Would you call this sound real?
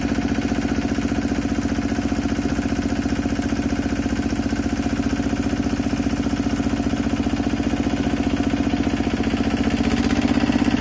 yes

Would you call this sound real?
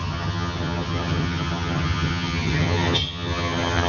no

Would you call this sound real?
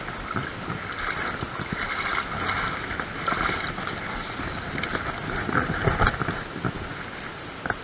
yes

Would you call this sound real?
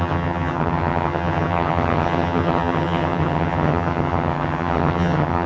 no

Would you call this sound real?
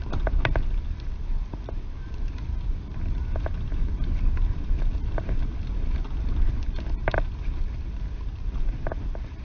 yes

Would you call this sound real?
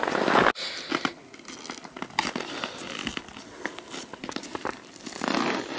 yes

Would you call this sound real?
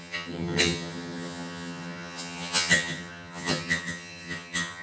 no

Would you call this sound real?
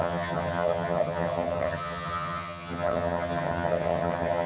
no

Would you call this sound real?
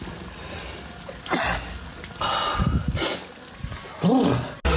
yes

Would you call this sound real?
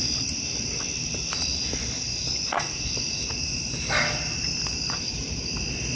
yes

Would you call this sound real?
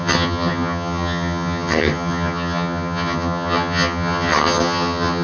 no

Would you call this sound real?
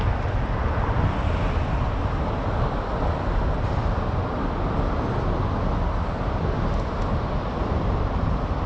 yes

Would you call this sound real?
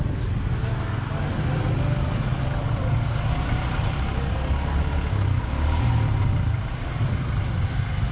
yes